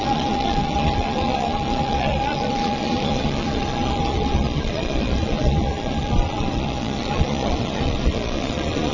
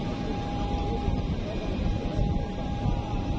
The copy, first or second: first